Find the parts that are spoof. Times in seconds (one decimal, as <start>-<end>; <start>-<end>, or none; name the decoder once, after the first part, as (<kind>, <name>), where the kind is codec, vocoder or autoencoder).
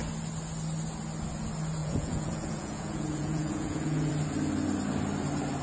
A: 1.8-4.1 (vocoder, Vocos)